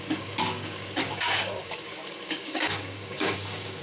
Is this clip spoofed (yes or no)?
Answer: yes